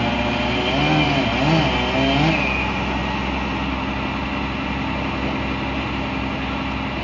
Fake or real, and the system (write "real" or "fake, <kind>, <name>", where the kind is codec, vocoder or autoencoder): real